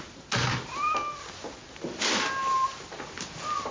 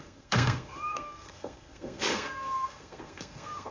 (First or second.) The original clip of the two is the first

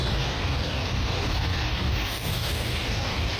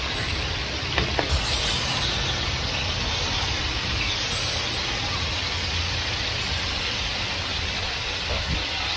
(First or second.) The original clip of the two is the second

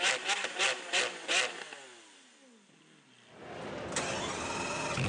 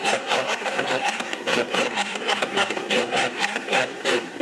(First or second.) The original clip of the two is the first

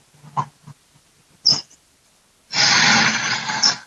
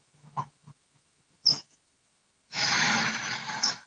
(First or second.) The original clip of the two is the first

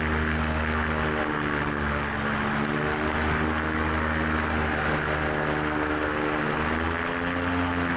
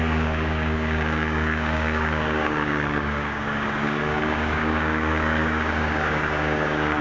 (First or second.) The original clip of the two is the first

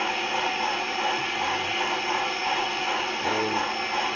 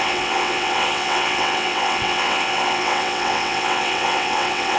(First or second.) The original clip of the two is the first